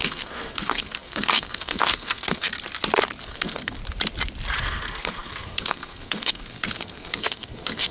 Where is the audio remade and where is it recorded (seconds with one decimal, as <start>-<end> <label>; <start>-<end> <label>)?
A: 0.0-2.5 remade; 2.5-3.2 recorded; 3.2-3.8 remade; 3.8-4.6 recorded; 4.6-7.9 remade